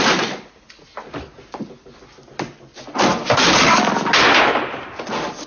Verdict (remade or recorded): recorded